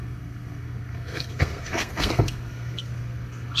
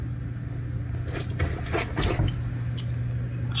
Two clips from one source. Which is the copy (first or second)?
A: first